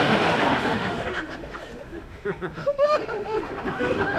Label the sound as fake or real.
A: fake